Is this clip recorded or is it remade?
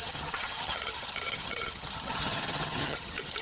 remade